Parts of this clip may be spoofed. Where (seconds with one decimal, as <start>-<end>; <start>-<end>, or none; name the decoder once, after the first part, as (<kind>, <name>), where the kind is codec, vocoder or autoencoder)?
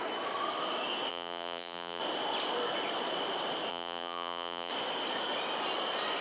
1.1-2.0 (vocoder, BigVGAN v2); 3.7-4.7